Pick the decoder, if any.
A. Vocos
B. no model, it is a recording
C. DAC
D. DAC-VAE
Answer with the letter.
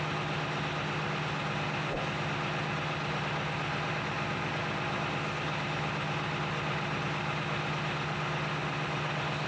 B